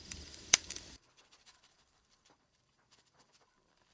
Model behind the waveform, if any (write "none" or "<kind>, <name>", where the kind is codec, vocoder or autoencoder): vocoder, BigVGAN v2